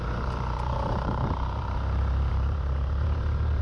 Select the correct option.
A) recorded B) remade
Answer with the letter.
B